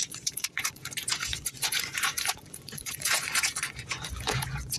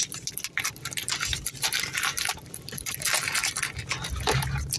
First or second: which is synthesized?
first